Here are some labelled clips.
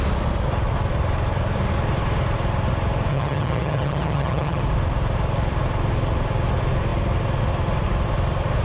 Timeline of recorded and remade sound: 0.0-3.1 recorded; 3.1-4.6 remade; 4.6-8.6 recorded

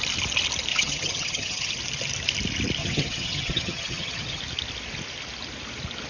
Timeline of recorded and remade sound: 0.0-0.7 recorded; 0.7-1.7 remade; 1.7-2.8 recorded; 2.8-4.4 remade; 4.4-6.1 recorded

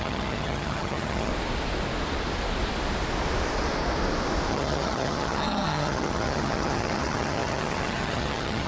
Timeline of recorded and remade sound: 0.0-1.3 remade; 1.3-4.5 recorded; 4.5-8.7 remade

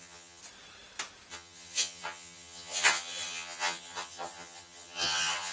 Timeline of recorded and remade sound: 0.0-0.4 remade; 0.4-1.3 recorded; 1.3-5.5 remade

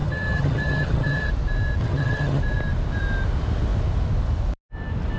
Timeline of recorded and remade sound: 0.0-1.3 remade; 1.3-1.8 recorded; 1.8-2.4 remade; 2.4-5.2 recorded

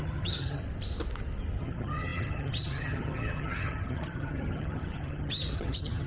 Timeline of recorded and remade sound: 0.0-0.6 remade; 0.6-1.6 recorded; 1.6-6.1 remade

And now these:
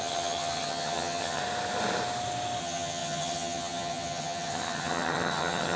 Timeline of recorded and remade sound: 0.0-1.4 remade; 1.4-2.6 recorded; 2.6-5.8 remade